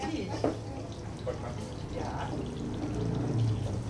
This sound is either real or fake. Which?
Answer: real